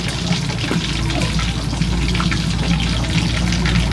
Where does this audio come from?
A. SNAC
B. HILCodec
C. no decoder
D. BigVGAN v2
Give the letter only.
C